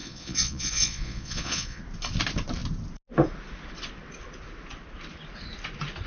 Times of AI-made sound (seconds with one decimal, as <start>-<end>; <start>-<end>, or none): 0.0-1.8